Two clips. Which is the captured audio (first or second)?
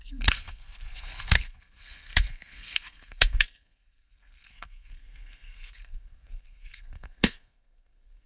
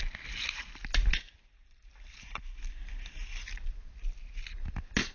second